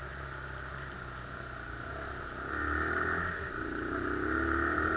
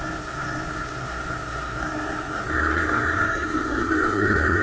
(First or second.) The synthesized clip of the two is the second